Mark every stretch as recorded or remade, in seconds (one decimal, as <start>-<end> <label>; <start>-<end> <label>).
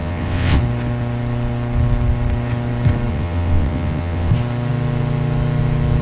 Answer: 0.0-0.6 remade; 0.6-3.1 recorded; 3.1-4.3 remade; 4.3-6.0 recorded